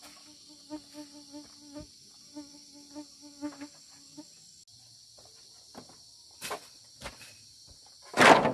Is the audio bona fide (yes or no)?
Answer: yes